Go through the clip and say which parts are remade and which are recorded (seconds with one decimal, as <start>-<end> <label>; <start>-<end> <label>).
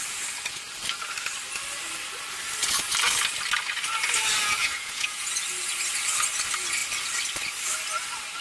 0.0-4.6 recorded; 4.6-5.3 remade; 5.3-8.4 recorded